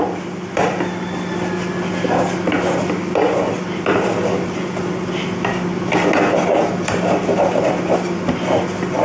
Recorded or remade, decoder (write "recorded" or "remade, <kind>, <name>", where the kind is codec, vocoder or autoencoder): recorded